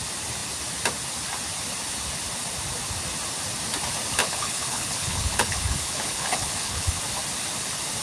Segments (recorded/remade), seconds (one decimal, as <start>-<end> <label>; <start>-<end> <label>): 0.0-4.2 recorded; 4.2-7.0 remade; 7.0-8.0 recorded